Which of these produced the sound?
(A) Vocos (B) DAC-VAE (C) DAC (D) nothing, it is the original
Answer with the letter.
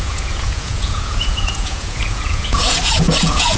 A